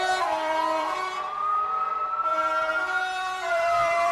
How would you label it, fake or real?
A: fake